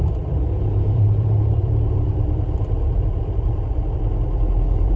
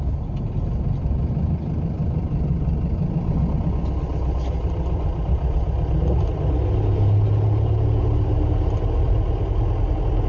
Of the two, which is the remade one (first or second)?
first